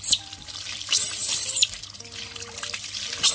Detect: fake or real fake